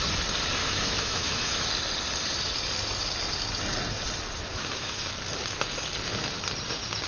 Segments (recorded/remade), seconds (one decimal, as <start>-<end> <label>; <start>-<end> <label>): 0.0-0.6 recorded; 0.6-1.7 remade; 1.7-4.5 recorded; 4.5-5.1 remade; 5.1-7.1 recorded